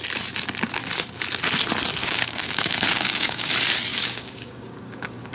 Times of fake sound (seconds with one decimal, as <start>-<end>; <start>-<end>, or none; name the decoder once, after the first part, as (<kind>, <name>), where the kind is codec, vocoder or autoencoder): 2.0-3.5 (codec, DAC); 3.9-5.3